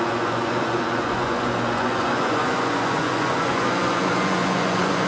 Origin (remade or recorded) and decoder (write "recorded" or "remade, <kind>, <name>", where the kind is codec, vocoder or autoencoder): remade, vocoder, Vocos